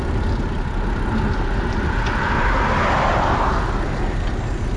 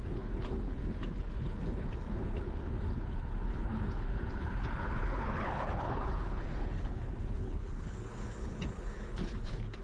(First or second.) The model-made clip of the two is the second